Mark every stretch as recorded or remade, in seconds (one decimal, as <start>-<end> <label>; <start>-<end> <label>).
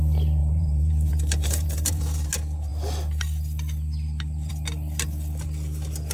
0.0-0.4 recorded; 0.4-2.3 remade; 2.3-6.1 recorded